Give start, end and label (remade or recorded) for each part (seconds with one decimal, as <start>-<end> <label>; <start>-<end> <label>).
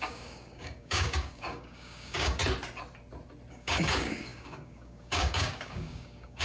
0.0-2.4 remade; 2.4-3.5 recorded; 3.5-6.4 remade